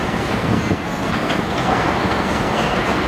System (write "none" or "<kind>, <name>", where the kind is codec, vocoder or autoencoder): codec, SNAC